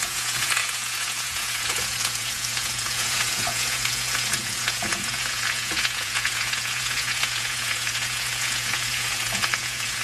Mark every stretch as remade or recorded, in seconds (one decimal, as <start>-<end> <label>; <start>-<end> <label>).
0.0-10.0 remade

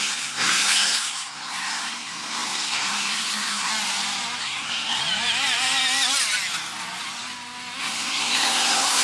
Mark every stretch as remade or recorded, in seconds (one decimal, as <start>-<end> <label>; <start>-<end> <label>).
0.0-3.7 remade; 3.7-4.4 recorded; 4.4-5.0 remade; 5.0-7.8 recorded; 7.8-9.0 remade

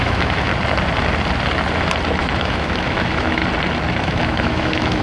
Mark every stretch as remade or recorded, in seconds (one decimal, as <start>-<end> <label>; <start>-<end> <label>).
0.0-0.5 remade; 0.5-2.4 recorded; 2.4-3.4 remade; 3.4-4.0 recorded; 4.0-5.0 remade